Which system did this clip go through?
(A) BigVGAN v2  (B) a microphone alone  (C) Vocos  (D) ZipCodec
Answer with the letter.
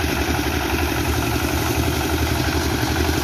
B